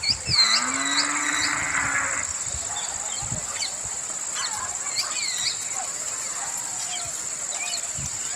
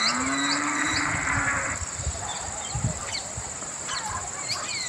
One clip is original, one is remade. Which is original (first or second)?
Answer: first